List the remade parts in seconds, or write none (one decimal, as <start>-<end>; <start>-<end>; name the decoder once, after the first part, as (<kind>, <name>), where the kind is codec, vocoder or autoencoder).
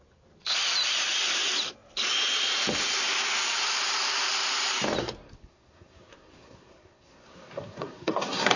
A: 5.0-8.6 (codec, SNAC)